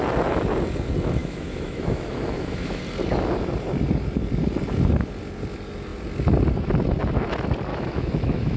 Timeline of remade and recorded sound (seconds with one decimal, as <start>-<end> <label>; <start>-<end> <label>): 0.0-1.2 recorded; 1.2-2.8 remade; 2.8-7.7 recorded; 7.7-8.6 remade